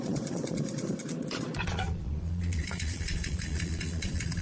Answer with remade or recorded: remade